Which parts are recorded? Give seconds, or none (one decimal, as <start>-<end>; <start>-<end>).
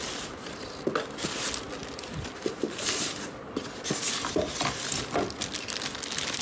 0.0-6.4